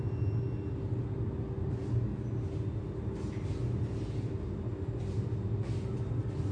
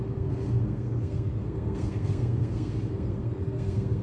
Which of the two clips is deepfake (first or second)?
second